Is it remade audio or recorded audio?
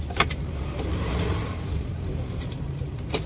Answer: remade